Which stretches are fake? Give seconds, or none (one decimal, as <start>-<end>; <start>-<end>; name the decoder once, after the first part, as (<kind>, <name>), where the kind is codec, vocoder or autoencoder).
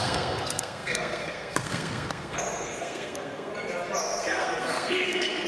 0.0-3.5 (codec, SNAC); 4.0-5.5